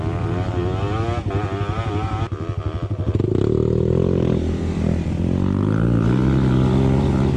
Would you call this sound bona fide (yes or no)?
yes